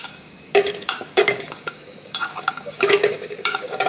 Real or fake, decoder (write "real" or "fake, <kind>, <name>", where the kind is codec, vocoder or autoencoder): fake, codec, DAC